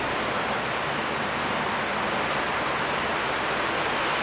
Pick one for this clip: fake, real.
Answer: real